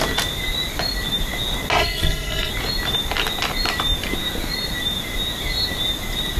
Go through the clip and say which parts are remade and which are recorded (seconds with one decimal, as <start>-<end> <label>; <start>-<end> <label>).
0.0-1.8 recorded; 1.8-2.5 remade; 2.5-6.4 recorded